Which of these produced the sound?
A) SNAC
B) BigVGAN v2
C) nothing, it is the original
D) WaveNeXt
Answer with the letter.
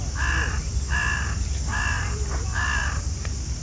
C